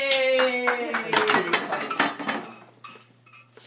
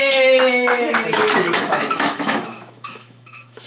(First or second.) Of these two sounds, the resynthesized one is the second